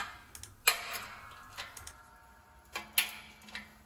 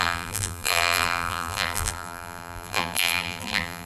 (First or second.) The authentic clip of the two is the first